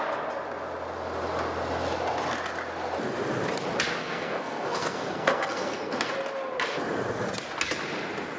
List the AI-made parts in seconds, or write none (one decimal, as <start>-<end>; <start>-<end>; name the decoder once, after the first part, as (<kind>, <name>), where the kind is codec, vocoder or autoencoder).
4.0-6.1 (codec, SNAC)